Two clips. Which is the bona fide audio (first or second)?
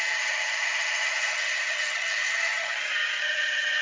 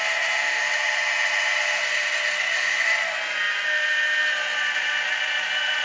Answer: second